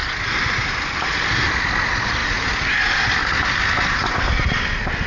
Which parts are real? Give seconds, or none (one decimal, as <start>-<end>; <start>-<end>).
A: 0.0-5.1